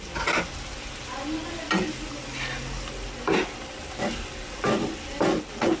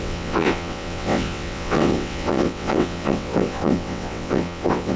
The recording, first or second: first